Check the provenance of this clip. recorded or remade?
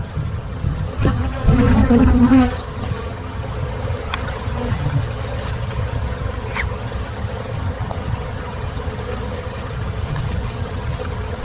remade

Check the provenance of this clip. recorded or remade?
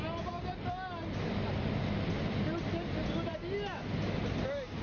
recorded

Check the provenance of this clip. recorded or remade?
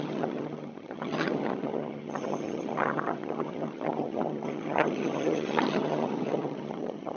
remade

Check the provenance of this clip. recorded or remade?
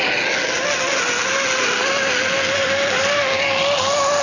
recorded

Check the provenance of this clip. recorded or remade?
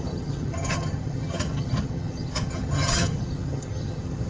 remade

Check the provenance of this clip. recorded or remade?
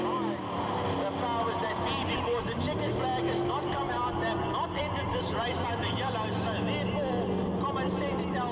recorded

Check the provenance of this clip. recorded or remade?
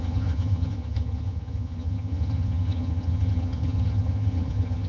remade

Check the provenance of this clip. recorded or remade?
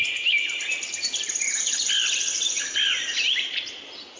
recorded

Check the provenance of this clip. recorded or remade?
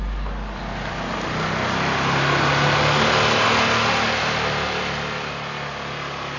recorded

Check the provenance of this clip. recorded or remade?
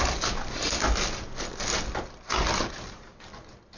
recorded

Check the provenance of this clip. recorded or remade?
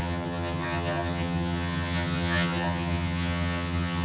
remade